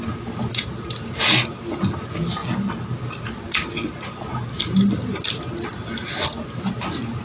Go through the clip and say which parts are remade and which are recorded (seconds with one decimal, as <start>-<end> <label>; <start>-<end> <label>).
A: 0.0-7.2 recorded

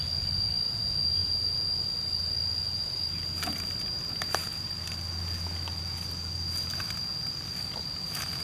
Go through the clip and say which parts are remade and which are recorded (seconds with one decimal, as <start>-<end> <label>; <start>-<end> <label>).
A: 0.0-8.4 recorded

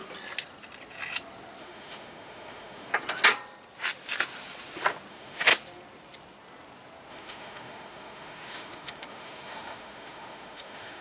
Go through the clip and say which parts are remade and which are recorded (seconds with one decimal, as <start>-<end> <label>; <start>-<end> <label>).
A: 0.0-1.6 recorded; 1.6-2.9 remade; 2.9-5.1 recorded; 5.1-5.5 remade; 5.5-7.1 recorded; 7.1-11.0 remade

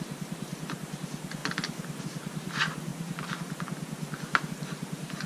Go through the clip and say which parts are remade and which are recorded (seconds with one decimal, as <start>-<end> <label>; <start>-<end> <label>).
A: 0.0-1.4 remade; 1.4-2.0 recorded; 2.0-2.9 remade; 2.9-4.5 recorded; 4.5-5.3 remade

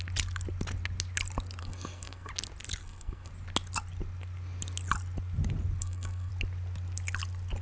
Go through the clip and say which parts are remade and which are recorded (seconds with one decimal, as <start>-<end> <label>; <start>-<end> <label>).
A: 0.0-1.6 recorded; 1.6-2.3 remade; 2.3-2.8 recorded; 2.8-3.3 remade; 3.3-5.8 recorded; 5.8-6.3 remade; 6.3-7.6 recorded